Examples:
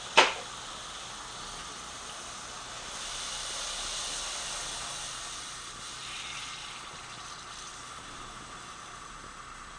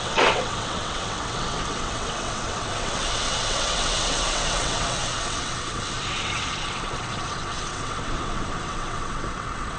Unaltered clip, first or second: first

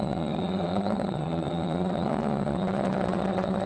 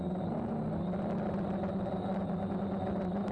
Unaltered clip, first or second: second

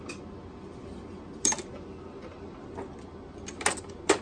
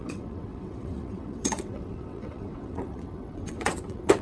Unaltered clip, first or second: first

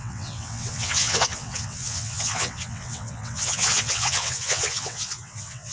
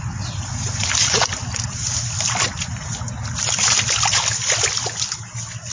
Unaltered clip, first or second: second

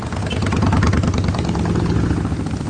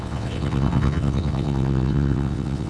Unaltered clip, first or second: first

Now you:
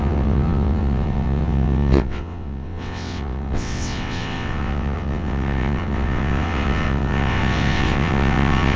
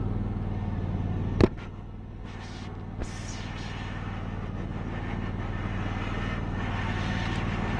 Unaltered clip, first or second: second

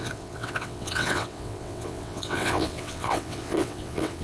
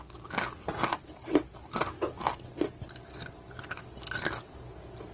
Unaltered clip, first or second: second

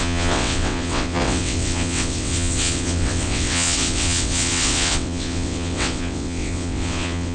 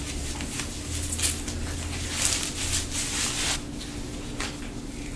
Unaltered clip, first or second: second